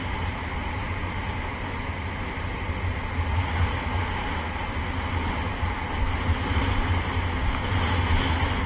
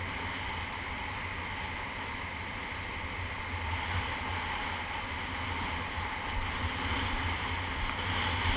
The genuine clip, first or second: second